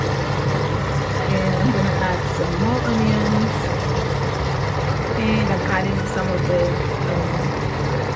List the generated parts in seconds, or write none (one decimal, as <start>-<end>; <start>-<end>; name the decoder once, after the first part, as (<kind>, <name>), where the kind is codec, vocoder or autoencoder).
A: none